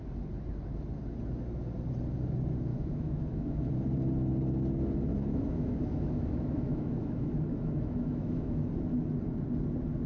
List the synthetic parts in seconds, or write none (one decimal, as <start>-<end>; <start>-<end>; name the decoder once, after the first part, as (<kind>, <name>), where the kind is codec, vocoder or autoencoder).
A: 2.7-3.7 (autoencoder, DAC-VAE); 5.1-8.7